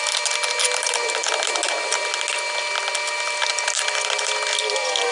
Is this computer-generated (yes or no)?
no